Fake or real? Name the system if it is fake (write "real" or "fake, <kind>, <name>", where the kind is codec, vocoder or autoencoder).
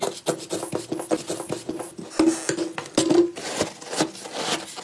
real